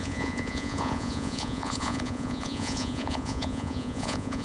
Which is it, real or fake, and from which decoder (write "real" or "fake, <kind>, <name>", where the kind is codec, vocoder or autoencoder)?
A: fake, vocoder, Vocos